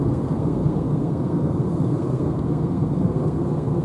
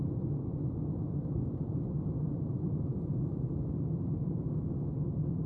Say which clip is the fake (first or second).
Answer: first